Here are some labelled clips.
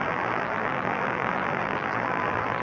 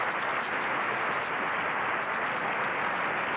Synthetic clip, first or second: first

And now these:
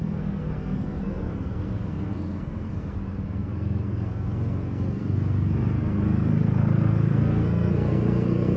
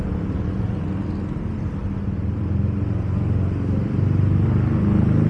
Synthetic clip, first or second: first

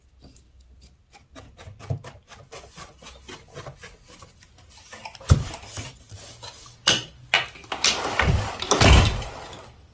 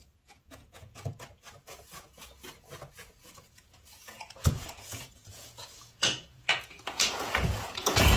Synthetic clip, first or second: second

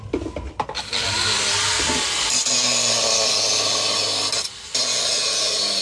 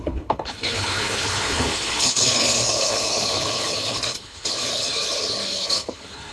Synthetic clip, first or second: second